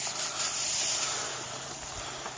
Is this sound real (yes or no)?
yes